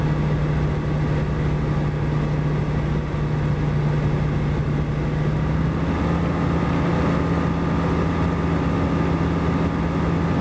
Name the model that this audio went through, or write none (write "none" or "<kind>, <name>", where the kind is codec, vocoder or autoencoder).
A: none